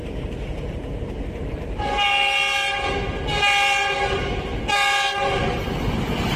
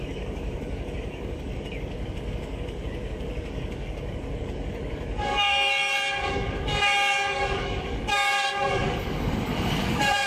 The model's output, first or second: second